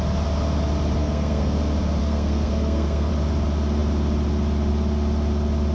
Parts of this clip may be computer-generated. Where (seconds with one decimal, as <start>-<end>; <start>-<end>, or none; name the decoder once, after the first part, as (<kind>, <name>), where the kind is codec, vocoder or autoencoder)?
1.0-1.6 (codec, SNAC); 2.0-3.1